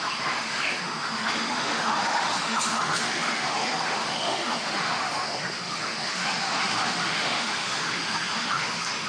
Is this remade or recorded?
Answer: remade